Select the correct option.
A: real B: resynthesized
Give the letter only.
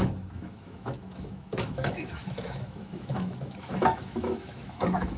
B